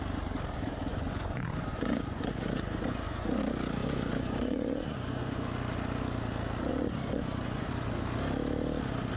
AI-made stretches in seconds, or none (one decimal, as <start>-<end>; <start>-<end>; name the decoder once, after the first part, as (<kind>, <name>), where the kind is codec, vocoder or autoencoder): 0.9-3.4 (vocoder, Vocos); 3.8-5.5; 6.7-7.7